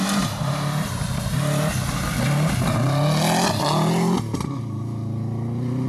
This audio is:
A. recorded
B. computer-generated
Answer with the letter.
A